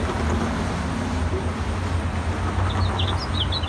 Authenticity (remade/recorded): recorded